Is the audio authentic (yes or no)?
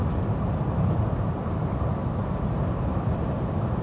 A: yes